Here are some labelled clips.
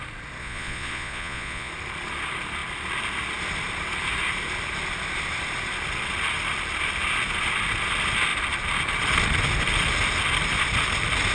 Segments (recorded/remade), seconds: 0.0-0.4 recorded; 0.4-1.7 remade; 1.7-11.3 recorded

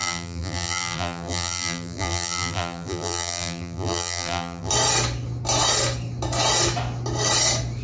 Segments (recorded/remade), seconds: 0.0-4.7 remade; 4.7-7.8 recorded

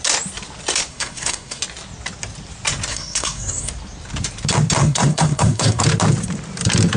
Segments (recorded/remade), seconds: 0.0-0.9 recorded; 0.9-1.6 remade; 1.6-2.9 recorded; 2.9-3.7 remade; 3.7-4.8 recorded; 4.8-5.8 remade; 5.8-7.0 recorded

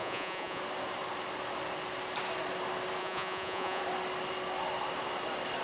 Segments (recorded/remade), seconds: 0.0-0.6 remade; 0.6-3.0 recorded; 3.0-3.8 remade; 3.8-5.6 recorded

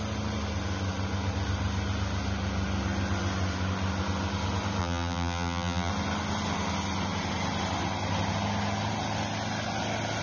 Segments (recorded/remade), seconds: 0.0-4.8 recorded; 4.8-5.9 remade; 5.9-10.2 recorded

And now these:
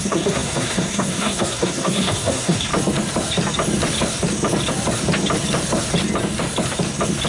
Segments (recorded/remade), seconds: 0.0-2.7 remade; 2.7-7.3 recorded